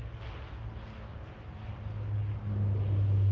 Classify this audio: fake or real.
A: real